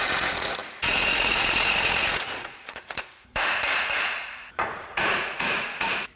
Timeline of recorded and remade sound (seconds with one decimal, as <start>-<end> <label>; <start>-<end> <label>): 0.0-6.2 remade